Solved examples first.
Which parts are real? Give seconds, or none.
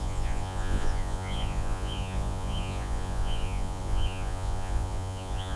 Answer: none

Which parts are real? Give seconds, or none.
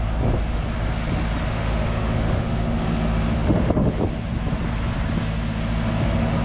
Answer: 0.0-1.5; 4.0-6.4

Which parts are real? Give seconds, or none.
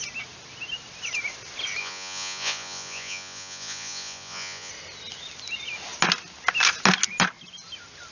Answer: 0.0-1.8; 4.7-8.1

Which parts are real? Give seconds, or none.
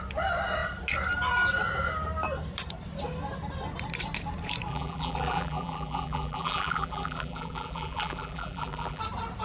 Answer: 0.0-4.7; 9.0-9.4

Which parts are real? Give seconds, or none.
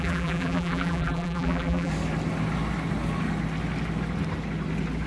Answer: 1.9-5.1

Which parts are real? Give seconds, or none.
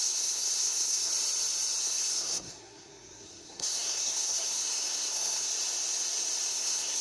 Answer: 1.1-1.8; 5.5-6.5